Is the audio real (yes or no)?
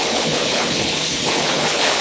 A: no